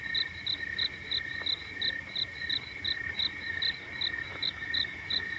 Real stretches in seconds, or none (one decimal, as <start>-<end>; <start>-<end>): 0.0-4.3